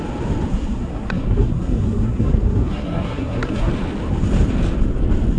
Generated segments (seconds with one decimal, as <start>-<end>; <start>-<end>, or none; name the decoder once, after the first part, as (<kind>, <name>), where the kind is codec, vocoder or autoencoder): 0.5-3.7 (codec, SNAC)